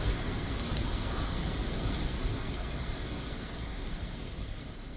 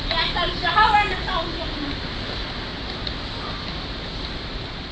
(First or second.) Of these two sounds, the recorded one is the second